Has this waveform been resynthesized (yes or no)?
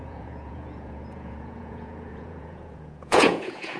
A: yes